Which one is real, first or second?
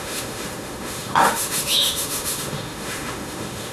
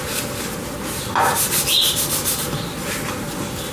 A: second